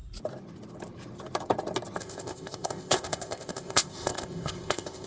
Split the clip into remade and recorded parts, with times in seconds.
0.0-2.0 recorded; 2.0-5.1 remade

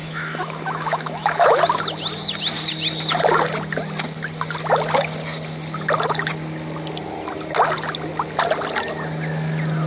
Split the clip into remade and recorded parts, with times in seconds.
0.0-1.6 remade; 1.6-9.9 recorded

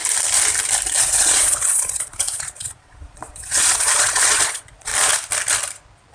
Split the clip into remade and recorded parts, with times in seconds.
0.0-1.0 recorded; 1.0-4.9 remade; 4.9-6.1 recorded

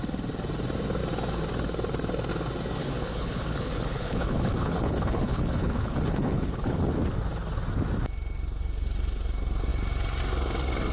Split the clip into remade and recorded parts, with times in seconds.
0.0-2.8 recorded; 2.8-6.9 remade; 6.9-10.9 recorded

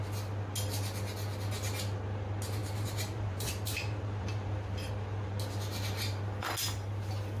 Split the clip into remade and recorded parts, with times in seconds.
0.0-2.6 recorded; 2.6-4.9 remade; 4.9-7.4 recorded